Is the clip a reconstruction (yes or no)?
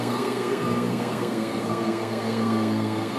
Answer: yes